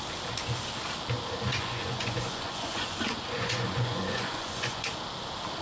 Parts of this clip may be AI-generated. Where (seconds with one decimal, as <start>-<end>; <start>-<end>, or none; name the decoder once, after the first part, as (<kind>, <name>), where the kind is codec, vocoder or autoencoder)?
1.5-4.9 (vocoder, Vocos)